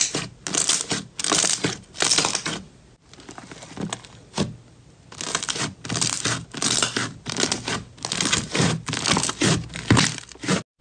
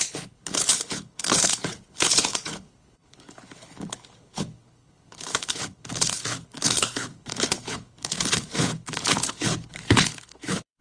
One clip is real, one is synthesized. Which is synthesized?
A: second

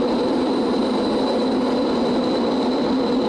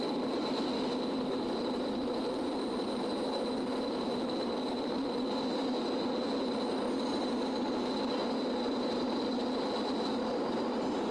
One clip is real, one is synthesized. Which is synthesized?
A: second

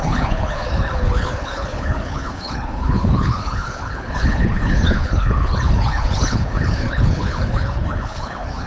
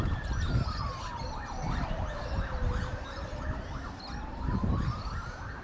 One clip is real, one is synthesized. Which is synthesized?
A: first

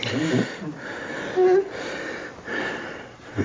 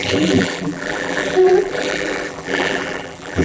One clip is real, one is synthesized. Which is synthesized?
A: second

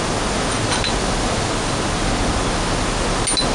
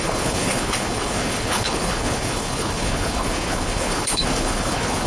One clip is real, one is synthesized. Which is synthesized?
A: second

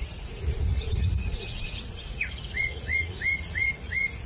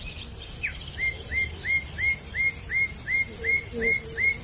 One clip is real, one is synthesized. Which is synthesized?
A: first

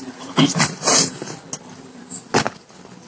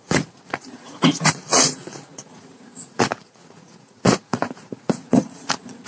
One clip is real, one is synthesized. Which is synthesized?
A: second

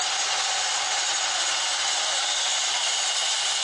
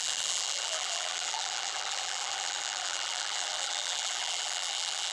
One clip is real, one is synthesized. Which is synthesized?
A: second